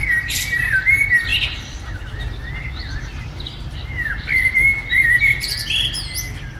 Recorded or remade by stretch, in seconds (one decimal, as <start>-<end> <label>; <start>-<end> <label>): 0.0-0.8 remade; 0.8-6.6 recorded